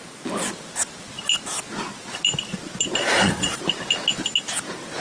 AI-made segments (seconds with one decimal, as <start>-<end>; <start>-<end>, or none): 3.0-3.6